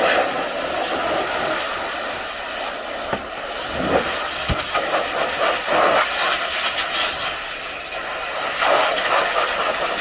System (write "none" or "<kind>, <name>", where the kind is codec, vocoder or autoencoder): none